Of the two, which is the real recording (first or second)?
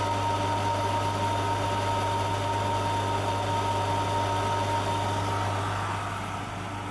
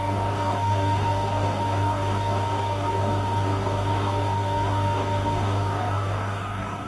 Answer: first